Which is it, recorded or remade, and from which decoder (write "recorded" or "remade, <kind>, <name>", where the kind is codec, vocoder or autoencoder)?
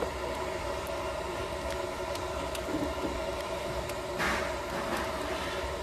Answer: recorded